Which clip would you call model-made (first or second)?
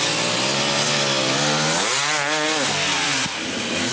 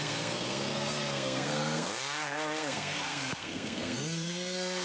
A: second